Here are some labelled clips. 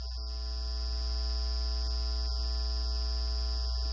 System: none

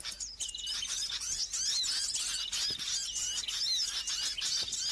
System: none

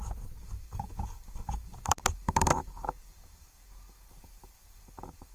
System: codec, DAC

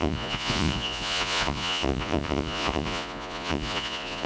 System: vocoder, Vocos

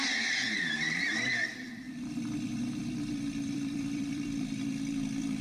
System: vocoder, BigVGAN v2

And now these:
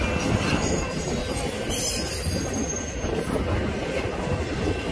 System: none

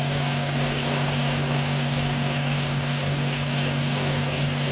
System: codec, DAC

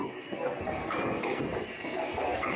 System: codec, SNAC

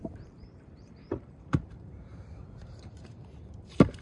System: vocoder, BigVGAN v2